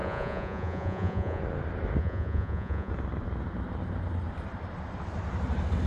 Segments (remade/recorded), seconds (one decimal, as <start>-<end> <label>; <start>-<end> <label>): 0.0-1.4 remade; 1.4-2.0 recorded; 2.0-2.9 remade; 2.9-5.9 recorded

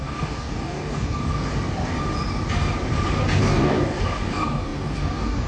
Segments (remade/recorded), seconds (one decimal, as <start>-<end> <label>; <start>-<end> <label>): 0.0-1.5 remade; 1.5-3.4 recorded; 3.4-5.5 remade

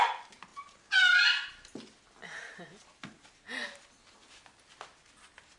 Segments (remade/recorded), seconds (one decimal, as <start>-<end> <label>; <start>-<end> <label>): 0.0-5.6 recorded

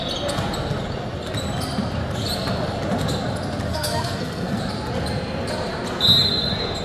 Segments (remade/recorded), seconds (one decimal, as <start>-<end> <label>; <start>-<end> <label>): 0.0-3.7 recorded; 3.7-4.6 remade; 4.6-6.8 recorded